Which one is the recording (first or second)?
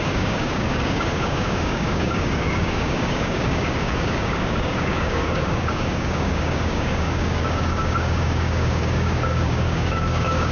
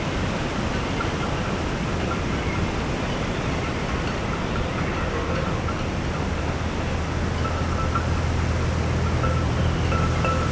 second